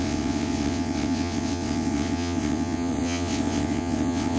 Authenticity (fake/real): fake